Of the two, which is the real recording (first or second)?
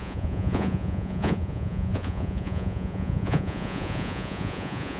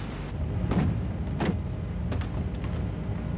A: second